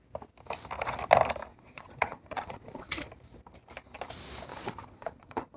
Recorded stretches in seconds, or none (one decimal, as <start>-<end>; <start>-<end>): 0.0-1.5; 3.1-4.5